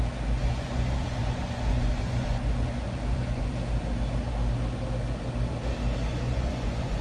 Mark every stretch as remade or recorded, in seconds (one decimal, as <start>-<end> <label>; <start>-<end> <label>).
0.0-0.4 recorded; 0.4-3.5 remade; 3.5-6.1 recorded; 6.1-7.0 remade